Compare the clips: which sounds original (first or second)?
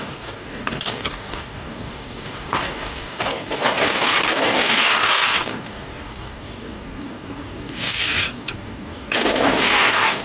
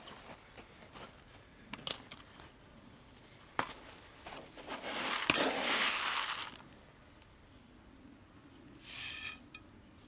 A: second